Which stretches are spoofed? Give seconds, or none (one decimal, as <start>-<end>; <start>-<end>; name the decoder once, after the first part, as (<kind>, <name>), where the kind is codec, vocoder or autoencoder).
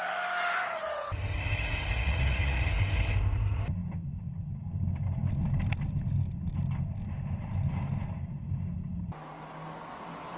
2.0-2.7 (vocoder, Vocos)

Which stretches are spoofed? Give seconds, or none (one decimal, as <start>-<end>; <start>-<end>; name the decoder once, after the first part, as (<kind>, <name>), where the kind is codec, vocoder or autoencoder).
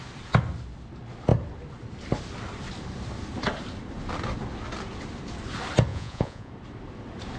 5.9-6.5 (vocoder, Vocos)